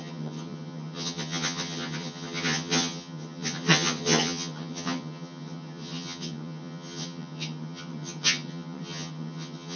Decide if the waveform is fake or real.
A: fake